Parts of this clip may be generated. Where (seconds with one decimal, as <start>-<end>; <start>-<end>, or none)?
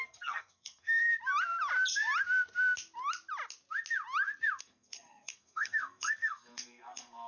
0.0-1.1; 4.6-7.3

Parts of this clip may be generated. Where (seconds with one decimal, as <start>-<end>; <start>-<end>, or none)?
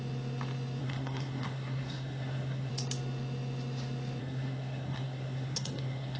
0.8-2.7; 4.2-6.2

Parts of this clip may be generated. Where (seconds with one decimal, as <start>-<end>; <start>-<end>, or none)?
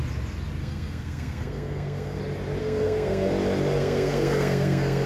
0.6-2.2; 2.6-3.3; 3.8-5.1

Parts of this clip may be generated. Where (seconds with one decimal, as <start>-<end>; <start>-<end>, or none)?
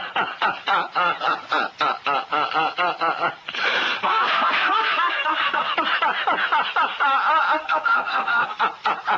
4.0-5.7; 7.6-8.6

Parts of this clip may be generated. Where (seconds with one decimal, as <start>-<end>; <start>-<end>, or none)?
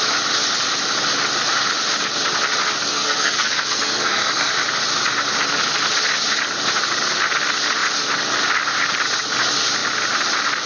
2.9-4.5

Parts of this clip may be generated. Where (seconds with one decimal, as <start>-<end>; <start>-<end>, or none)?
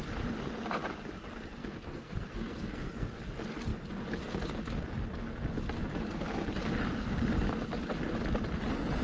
1.6-3.1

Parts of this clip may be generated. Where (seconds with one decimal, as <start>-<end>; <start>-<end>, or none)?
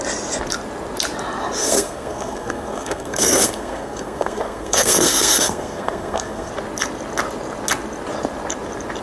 1.6-6.5